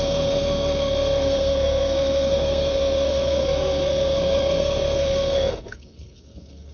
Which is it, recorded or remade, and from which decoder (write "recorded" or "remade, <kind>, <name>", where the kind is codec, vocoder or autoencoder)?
remade, codec, SNAC